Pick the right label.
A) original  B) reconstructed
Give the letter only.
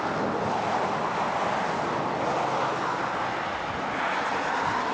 A